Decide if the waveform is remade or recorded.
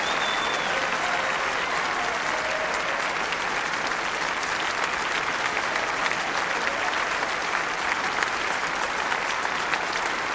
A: recorded